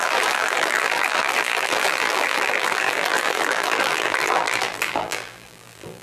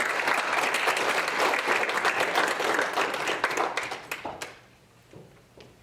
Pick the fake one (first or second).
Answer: first